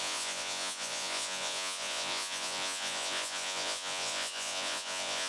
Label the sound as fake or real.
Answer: fake